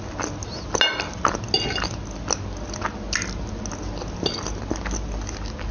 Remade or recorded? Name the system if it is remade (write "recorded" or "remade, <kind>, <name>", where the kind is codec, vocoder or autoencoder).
recorded